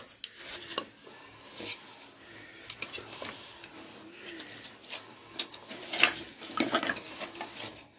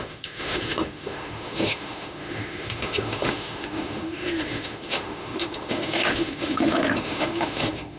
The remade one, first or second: second